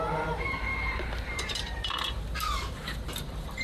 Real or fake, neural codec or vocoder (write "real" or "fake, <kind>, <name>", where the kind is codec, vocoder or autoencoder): fake, vocoder, BigVGAN v2